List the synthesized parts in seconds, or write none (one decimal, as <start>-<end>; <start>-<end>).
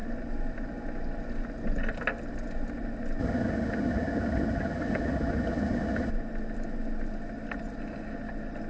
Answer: 3.2-6.1